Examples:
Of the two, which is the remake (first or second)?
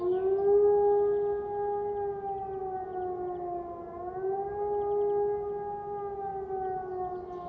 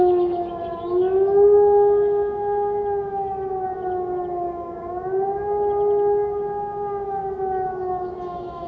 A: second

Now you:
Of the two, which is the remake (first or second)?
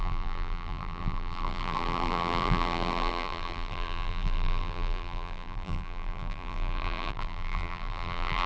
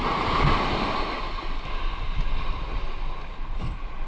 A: first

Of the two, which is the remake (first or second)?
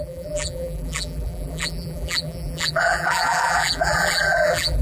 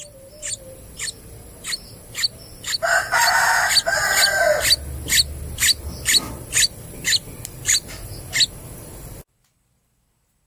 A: first